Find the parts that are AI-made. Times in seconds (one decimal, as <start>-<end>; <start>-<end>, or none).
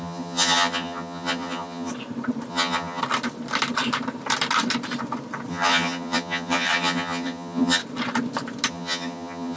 0.0-1.9; 2.5-3.0; 5.5-7.8; 8.7-9.6